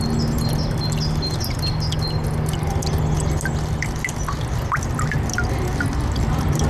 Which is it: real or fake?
real